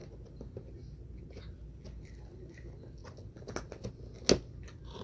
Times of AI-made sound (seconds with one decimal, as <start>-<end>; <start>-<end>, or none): none